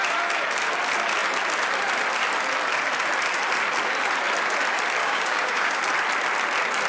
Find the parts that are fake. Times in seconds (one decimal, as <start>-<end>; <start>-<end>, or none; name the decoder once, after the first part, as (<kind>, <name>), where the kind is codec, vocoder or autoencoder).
5.0-5.8 (codec, DAC)